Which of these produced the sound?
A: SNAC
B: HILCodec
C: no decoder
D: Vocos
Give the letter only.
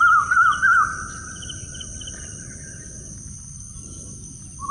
C